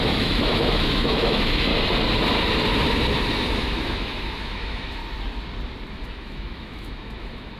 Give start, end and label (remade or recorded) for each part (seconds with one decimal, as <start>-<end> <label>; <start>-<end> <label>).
0.0-1.7 remade; 1.7-3.5 recorded; 3.5-5.0 remade; 5.0-5.9 recorded; 5.9-7.6 remade